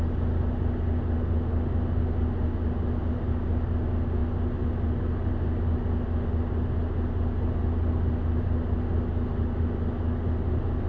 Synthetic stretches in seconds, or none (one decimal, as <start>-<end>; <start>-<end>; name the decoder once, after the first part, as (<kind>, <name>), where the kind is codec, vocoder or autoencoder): none